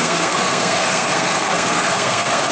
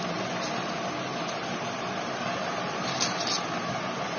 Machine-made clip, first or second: first